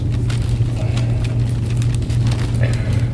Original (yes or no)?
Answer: yes